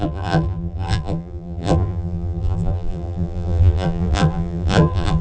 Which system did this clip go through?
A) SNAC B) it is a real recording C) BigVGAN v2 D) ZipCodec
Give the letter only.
C